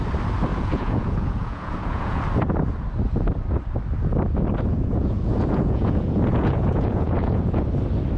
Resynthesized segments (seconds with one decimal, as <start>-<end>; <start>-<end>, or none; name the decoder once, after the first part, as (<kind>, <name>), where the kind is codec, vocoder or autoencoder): 0.5-2.2 (vocoder, Vocos); 4.7-7.6